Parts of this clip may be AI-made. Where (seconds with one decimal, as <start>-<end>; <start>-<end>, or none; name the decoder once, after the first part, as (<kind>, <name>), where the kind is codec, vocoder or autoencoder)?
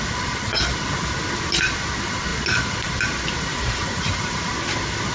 3.5-4.5 (vocoder, Vocos)